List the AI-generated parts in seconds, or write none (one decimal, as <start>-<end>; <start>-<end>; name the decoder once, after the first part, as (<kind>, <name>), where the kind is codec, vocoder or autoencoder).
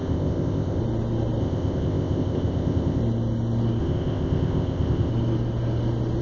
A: 0.0-0.8 (codec, ZipCodec); 1.4-3.0; 3.8-5.1